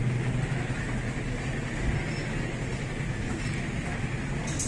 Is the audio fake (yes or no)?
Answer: no